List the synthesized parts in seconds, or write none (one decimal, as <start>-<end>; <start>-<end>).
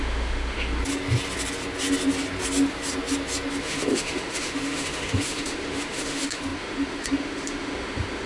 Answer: 0.0-0.8; 3.6-8.3